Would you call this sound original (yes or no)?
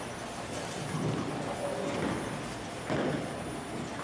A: yes